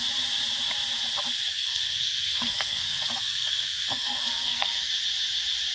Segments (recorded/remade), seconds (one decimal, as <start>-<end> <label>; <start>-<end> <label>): 0.0-1.5 recorded; 1.5-4.9 remade; 4.9-5.7 recorded